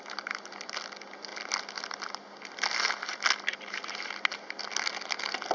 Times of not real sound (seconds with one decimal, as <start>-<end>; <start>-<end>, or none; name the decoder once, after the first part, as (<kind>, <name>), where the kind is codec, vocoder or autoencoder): none